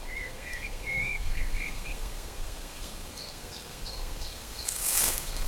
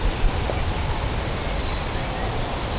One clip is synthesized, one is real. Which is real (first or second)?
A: second